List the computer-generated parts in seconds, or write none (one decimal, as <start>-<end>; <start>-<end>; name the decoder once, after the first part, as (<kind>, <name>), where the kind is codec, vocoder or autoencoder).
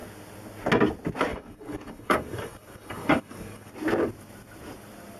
1.3-3.7 (codec, DAC)